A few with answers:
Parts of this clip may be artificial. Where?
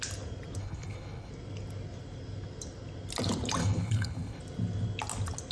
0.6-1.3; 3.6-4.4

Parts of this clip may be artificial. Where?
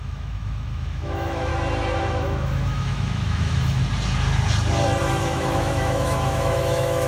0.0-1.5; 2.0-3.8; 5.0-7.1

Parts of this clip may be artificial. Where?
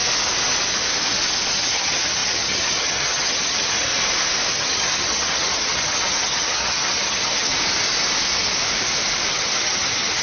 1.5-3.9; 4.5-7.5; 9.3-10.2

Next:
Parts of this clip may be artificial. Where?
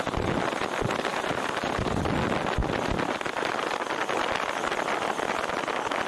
1.1-1.9